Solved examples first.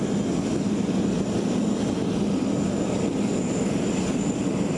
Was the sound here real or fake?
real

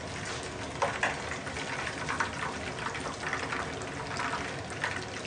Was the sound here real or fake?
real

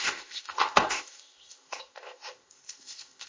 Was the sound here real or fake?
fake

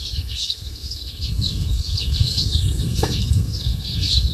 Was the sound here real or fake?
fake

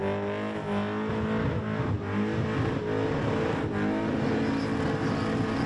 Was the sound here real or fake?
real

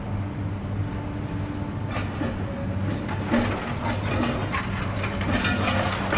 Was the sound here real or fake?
real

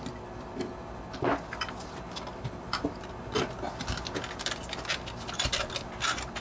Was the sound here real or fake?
real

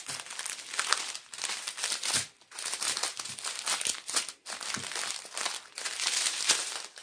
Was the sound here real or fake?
real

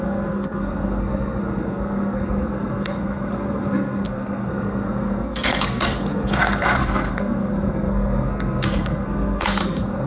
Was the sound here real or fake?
fake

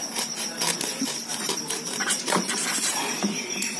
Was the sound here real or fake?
fake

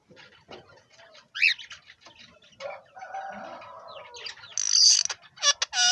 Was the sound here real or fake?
real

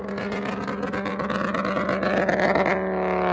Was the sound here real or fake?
real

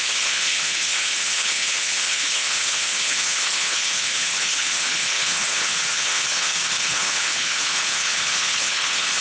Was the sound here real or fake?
fake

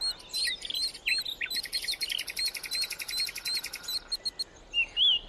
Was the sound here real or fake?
real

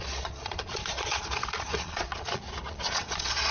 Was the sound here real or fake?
fake